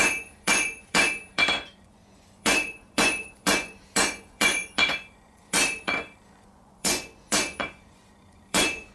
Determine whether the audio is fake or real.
fake